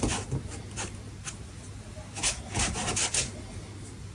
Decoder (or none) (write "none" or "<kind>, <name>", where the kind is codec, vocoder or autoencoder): none